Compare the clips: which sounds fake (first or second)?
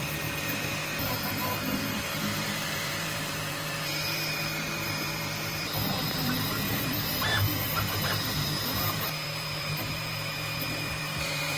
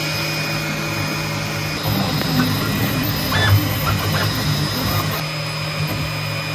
first